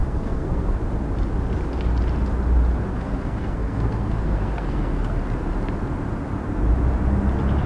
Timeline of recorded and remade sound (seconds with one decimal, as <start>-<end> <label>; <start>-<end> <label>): 0.0-0.8 remade; 0.8-2.9 recorded; 2.9-5.2 remade; 5.2-7.7 recorded